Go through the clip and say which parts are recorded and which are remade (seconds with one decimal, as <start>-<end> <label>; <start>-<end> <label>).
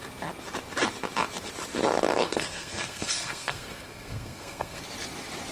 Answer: 0.0-2.1 recorded; 2.1-4.8 remade; 4.8-5.5 recorded